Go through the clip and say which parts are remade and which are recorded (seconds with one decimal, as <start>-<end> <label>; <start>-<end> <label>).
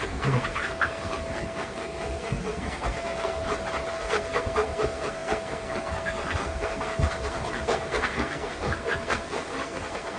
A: 0.0-3.4 remade; 3.4-3.9 recorded; 3.9-10.2 remade